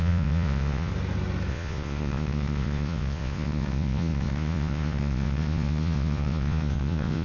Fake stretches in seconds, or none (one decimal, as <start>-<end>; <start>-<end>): 0.0-0.9; 1.5-7.2